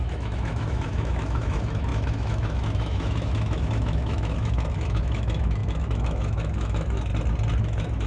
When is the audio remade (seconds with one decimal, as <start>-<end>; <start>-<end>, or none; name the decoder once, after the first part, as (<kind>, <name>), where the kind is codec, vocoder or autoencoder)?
0.0-7.1 (autoencoder, DAC-VAE); 7.6-8.1